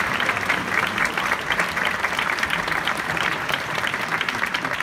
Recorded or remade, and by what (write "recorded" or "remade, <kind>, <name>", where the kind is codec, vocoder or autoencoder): remade, vocoder, BigVGAN v2